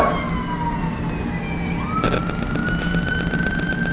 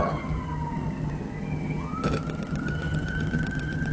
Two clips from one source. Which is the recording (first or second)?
first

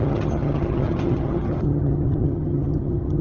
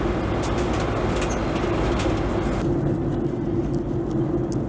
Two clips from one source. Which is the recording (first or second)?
second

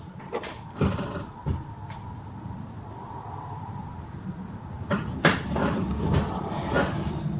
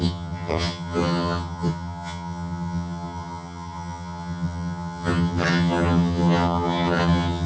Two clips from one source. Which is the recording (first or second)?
first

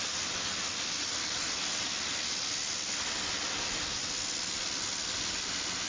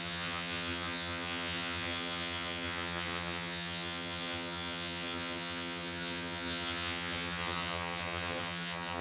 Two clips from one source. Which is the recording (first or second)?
first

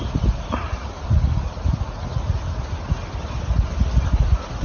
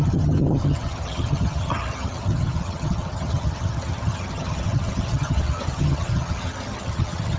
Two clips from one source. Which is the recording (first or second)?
first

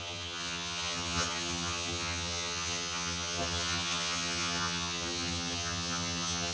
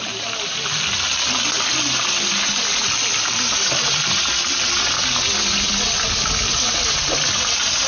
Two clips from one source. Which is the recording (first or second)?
second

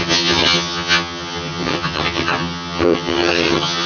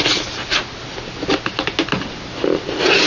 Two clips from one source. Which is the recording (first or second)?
second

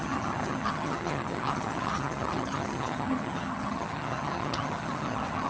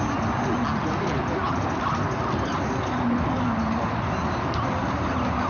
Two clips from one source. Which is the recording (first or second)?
second